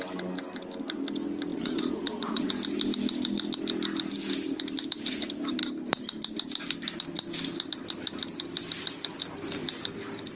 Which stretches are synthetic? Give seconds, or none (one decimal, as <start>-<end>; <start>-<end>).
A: 1.5-2.5